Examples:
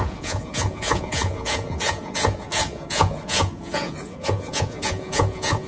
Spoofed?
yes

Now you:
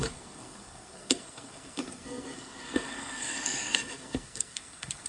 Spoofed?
yes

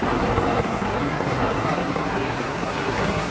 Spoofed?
yes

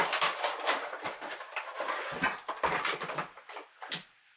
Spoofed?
yes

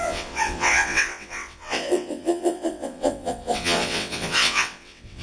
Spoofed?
yes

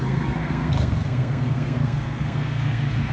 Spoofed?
yes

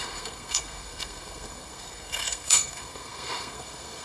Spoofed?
yes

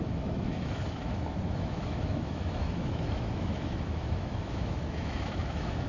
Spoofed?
yes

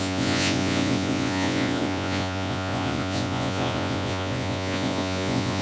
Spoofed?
yes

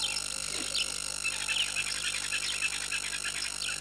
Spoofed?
no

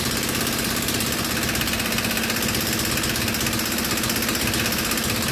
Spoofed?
no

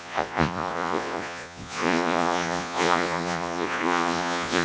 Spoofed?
yes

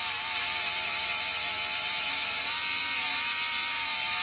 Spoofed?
yes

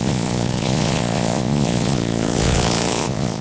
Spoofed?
yes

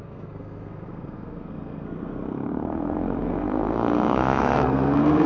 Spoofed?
yes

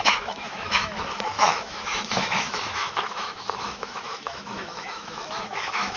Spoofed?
yes